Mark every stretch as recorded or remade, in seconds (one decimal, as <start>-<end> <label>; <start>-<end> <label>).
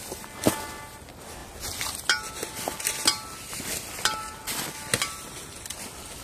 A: 0.0-6.2 recorded